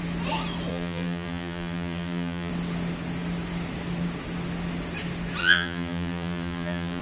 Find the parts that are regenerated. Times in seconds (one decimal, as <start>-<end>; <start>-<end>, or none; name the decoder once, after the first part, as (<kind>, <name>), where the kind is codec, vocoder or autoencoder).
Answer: 0.7-2.5 (vocoder, BigVGAN v2); 5.4-7.0